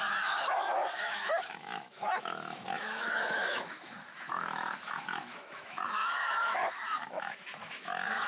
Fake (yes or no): yes